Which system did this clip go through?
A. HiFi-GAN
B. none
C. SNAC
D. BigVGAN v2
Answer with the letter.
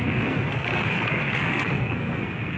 C